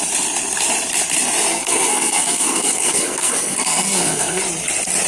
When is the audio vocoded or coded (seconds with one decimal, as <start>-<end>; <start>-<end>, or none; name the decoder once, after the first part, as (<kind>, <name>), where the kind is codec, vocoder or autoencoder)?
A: 1.5-4.4 (codec, SNAC)